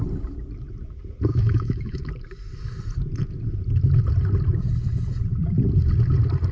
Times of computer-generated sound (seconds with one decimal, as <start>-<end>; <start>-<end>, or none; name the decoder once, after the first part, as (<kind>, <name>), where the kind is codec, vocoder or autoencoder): 1.3-2.0 (autoencoder, DAC-VAE)

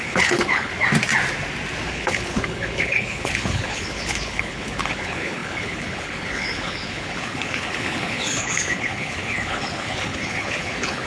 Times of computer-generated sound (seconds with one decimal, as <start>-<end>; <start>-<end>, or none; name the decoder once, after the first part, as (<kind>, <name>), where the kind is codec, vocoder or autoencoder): 0.0-0.7 (codec, HILCodec); 1.9-11.1

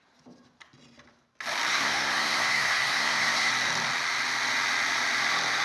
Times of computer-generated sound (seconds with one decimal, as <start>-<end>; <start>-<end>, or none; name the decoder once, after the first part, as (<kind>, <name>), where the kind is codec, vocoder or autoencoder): 1.7-3.5 (codec, SNAC)

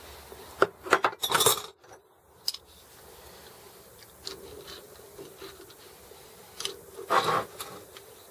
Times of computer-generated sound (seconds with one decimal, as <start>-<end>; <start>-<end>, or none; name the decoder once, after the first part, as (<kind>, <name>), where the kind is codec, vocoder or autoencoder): none

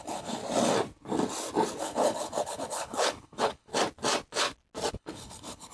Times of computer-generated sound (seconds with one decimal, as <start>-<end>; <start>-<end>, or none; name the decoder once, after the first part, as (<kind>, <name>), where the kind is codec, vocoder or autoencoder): 0.0-0.4 (codec, HILCodec); 1.8-3.7; 4.9-5.7

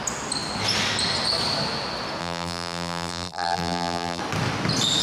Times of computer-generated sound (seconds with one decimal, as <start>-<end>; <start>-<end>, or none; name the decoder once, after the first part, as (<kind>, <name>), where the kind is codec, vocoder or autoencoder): 2.2-4.2 (vocoder, BigVGAN v2)